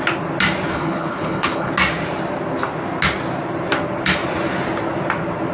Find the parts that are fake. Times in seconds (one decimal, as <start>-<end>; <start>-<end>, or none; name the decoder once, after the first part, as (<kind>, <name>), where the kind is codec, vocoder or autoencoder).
0.7-1.7 (codec, HILCodec)